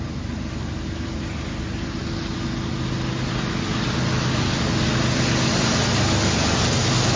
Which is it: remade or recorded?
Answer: recorded